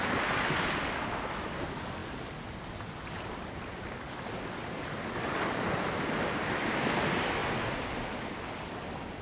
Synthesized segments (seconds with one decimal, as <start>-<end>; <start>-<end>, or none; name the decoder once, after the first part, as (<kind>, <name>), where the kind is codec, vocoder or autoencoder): none

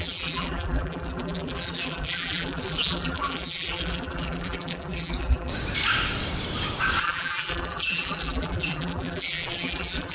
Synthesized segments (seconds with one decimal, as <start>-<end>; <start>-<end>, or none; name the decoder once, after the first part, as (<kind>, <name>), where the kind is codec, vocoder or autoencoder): 0.0-5.5 (vocoder, BigVGAN v2); 7.0-10.1

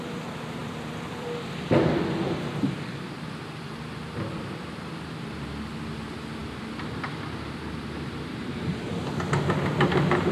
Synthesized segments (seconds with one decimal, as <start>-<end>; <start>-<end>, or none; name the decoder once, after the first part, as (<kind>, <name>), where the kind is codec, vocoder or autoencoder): 0.6-4.0 (vocoder, BigVGAN v2); 6.4-9.0

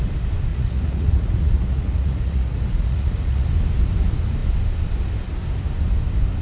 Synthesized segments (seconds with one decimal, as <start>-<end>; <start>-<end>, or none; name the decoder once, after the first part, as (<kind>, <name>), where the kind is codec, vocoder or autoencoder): 0.5-3.5 (vocoder, Vocos)